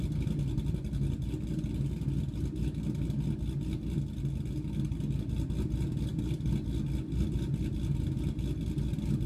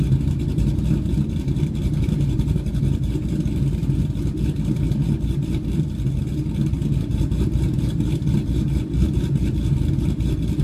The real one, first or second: first